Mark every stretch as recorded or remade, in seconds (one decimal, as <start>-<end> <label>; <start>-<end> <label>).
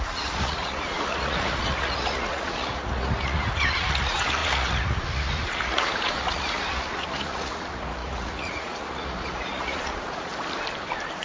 0.0-10.3 remade; 10.3-11.2 recorded